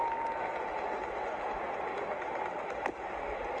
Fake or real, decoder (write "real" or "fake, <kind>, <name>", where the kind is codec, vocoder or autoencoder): real